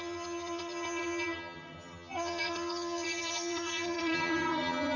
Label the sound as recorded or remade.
remade